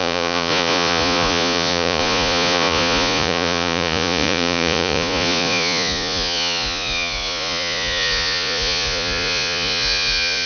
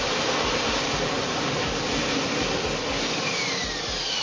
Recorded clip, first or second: second